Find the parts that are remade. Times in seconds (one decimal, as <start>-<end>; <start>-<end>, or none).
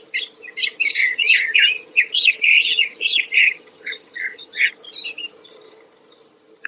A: 1.0-4.7